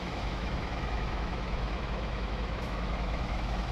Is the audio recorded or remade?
remade